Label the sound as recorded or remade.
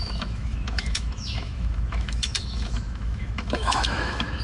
remade